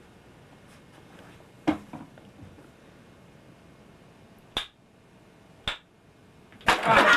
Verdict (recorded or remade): recorded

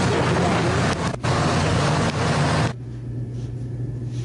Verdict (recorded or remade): recorded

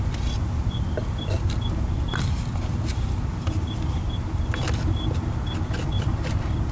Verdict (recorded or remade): recorded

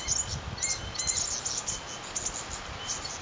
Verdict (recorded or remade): recorded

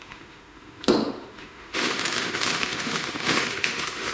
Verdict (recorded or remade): remade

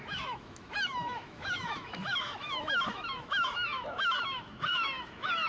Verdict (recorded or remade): remade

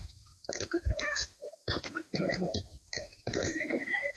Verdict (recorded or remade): remade